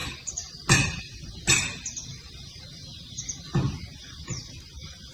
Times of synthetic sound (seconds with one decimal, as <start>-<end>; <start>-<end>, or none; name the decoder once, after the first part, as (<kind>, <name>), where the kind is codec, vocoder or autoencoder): 2.1-3.2 (vocoder, BigVGAN v2)